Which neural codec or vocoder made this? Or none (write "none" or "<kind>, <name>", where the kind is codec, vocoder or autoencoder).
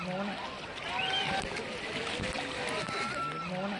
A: none